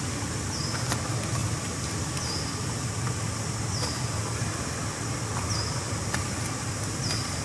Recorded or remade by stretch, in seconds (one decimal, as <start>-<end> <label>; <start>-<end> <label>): 0.0-7.4 recorded